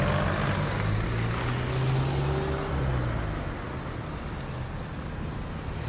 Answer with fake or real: real